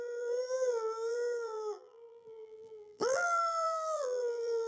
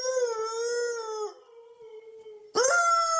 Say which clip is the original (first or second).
second